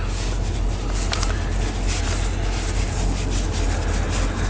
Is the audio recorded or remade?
recorded